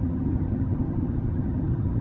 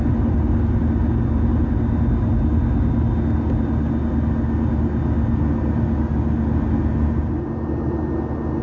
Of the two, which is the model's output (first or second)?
first